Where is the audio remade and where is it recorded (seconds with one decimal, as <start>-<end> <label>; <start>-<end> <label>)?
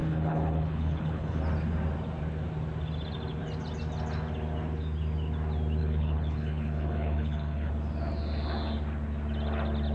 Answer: 0.0-1.4 remade; 1.4-5.8 recorded; 5.8-7.7 remade; 7.7-9.9 recorded